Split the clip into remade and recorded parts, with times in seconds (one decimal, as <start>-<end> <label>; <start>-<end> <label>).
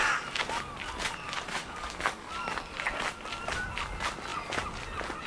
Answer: 0.0-1.6 recorded; 1.6-2.3 remade; 2.3-5.3 recorded